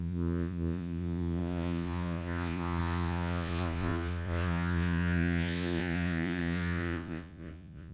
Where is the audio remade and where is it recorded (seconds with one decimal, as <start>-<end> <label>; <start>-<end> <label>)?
0.0-7.9 remade